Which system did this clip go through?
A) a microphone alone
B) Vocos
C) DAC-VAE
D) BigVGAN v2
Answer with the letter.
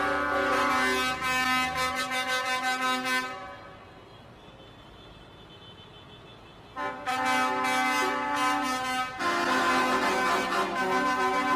A